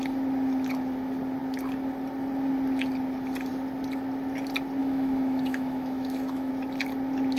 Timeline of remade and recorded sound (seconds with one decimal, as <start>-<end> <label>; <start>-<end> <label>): 0.0-4.8 recorded; 4.8-6.5 remade; 6.5-7.4 recorded